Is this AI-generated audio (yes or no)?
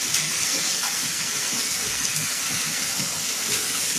yes